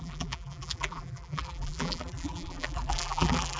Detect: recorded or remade remade